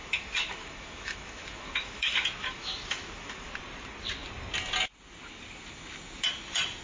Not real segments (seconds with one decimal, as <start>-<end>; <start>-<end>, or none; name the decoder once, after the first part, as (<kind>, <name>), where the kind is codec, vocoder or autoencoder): 0.0-3.5 (autoencoder, DAC-VAE)

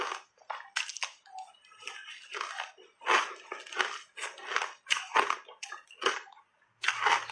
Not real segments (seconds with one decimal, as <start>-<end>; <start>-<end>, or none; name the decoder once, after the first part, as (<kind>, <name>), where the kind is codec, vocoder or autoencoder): 5.5-6.6 (vocoder, Vocos)